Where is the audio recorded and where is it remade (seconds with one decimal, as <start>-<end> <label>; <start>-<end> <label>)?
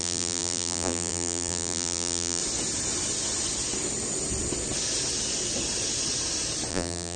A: 0.0-2.4 remade; 2.4-6.7 recorded; 6.7-7.2 remade